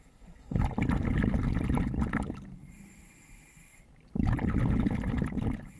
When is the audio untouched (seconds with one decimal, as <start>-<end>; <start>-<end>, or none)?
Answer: 0.6-5.8